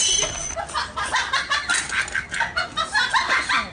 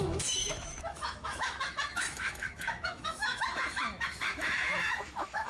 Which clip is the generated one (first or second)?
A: second